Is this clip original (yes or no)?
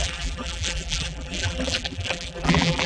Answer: no